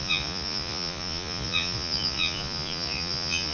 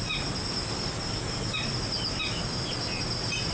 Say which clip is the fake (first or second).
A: first